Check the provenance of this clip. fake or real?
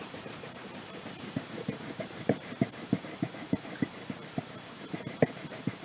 fake